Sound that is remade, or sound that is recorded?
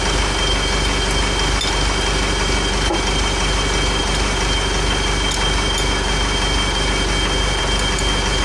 recorded